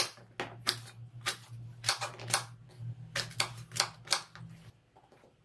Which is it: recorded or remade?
recorded